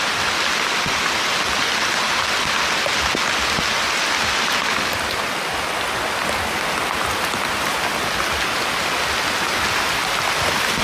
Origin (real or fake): real